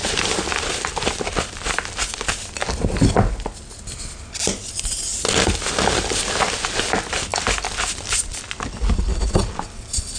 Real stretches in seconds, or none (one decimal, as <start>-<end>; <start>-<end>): 1.5-7.3; 8.4-10.2